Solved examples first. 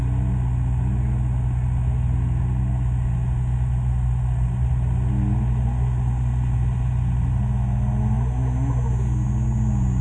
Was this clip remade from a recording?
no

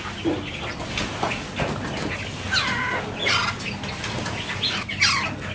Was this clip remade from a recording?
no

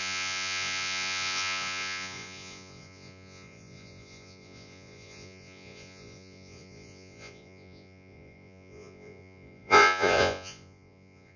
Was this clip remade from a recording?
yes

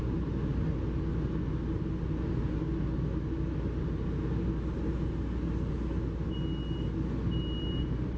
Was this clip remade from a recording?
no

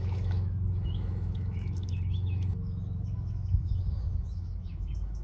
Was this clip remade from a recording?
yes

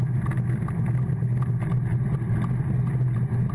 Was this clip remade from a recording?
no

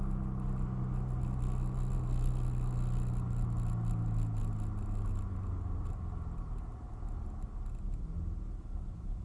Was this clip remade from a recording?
no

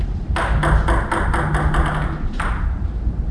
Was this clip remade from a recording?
no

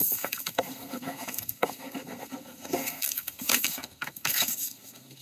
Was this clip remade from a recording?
yes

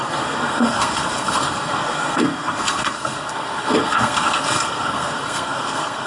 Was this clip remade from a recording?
yes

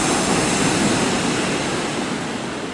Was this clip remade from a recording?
no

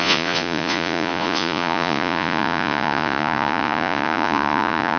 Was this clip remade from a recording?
yes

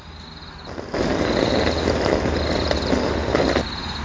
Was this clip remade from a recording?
no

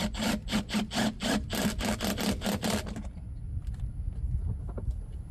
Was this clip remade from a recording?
no